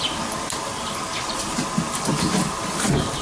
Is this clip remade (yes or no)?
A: no